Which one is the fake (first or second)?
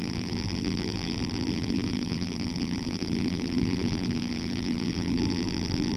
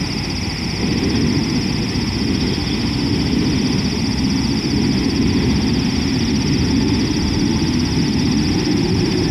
first